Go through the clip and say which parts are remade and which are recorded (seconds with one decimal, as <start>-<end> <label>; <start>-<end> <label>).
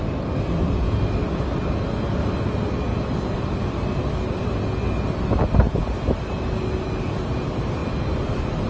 0.0-2.9 recorded; 2.9-3.8 remade; 3.8-8.7 recorded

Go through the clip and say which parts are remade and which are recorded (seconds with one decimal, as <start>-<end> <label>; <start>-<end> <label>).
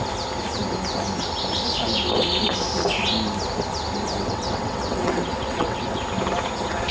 0.0-4.2 recorded; 4.2-6.0 remade; 6.0-6.9 recorded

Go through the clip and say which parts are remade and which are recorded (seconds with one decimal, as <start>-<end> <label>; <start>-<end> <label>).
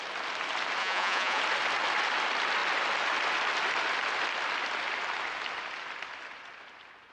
0.0-0.8 recorded; 0.8-1.4 remade; 1.4-7.1 recorded